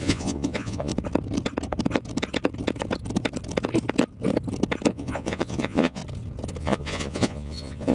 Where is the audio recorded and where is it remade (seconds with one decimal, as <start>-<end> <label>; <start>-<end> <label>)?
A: 0.0-0.9 remade; 0.9-4.9 recorded; 4.9-6.0 remade; 6.0-6.6 recorded; 6.6-7.9 remade